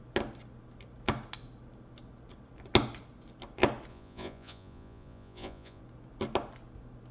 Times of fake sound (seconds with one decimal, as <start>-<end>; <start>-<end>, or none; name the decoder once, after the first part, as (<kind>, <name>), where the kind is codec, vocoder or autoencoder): 3.9-5.8 (vocoder, Vocos)